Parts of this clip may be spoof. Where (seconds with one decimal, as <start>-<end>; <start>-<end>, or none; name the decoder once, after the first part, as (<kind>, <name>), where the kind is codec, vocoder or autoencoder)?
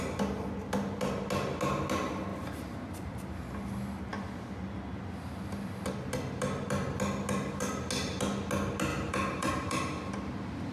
2.3-3.3 (vocoder, BigVGAN v2); 8.9-10.1